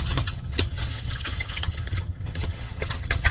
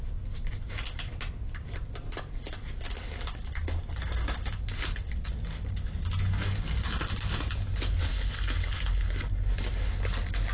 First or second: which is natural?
second